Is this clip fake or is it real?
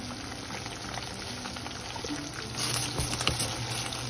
real